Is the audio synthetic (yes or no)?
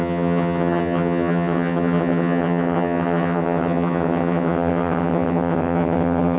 yes